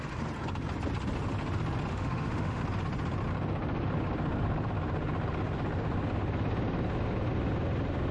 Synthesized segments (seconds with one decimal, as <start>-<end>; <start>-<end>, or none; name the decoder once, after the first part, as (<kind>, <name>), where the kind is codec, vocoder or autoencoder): 1.9-2.6 (autoencoder, DAC-VAE)